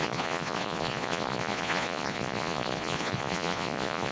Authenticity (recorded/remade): remade